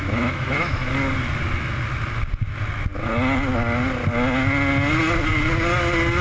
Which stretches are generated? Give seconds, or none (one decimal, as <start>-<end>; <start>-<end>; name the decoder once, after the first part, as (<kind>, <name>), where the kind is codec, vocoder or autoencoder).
0.0-0.9 (autoencoder, DAC-VAE)

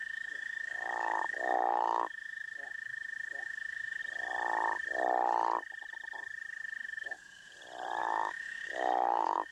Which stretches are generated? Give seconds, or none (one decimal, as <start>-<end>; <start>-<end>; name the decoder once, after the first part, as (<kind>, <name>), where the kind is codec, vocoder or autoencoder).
0.0-4.0 (autoencoder, DAC-VAE); 6.8-7.5; 8.0-9.5

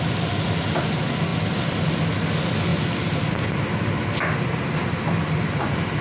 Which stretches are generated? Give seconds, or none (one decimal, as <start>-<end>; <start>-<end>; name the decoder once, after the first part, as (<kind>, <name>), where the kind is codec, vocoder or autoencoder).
none

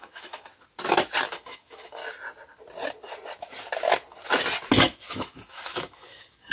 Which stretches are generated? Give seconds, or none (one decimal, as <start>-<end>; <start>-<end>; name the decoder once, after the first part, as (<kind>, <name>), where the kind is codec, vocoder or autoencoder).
0.0-0.5 (autoencoder, DAC-VAE); 1.3-2.0; 4.8-6.5

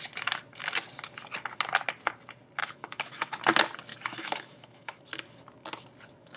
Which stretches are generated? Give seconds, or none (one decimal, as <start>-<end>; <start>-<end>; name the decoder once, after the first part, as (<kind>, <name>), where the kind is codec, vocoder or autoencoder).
2.6-3.4 (autoencoder, DAC-VAE); 3.9-5.0

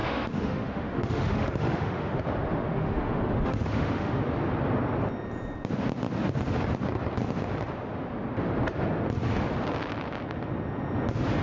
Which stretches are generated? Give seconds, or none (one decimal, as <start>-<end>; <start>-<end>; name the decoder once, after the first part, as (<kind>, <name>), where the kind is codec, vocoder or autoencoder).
0.0-2.1 (autoencoder, DAC-VAE); 2.5-4.2

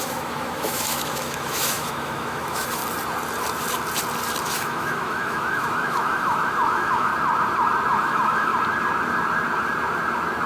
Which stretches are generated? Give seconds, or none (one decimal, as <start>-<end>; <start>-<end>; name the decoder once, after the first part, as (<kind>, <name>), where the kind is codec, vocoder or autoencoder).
0.0-2.8 (autoencoder, DAC-VAE); 4.4-7.1; 8.0-8.5